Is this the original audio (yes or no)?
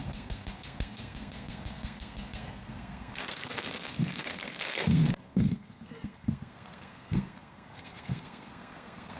no